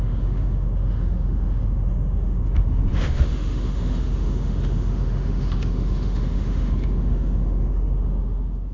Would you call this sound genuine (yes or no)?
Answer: no